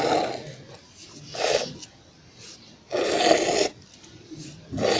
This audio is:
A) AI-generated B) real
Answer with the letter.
B